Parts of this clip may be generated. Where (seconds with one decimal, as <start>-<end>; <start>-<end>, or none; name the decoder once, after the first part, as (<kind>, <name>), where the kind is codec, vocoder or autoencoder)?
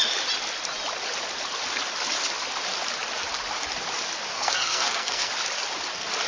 4.3-5.3 (codec, SNAC)